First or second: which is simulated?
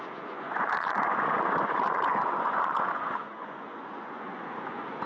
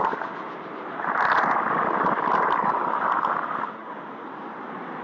first